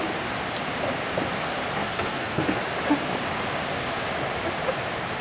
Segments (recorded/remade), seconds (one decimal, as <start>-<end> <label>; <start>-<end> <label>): 0.0-1.8 recorded; 1.8-2.6 remade; 2.6-5.2 recorded